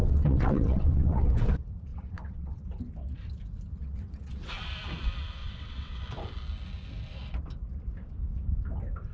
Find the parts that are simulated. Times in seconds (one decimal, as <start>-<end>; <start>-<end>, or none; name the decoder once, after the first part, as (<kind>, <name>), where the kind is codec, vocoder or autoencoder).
0.0-1.5 (vocoder, WaveNeXt); 1.9-2.6; 3.8-4.5; 5.4-6.0